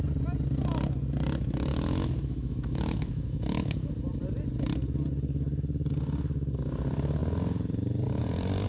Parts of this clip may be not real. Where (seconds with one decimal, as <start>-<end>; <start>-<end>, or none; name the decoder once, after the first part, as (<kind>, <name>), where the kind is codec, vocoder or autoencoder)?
1.7-3.9 (autoencoder, DAC-VAE)